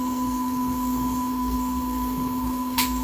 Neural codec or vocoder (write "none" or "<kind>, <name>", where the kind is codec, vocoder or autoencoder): codec, SNAC